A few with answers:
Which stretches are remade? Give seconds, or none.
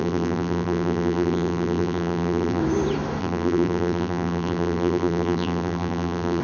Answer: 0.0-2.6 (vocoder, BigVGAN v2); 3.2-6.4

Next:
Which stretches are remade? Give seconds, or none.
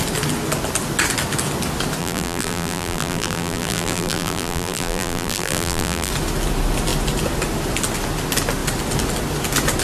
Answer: 2.0-6.1 (vocoder, BigVGAN v2)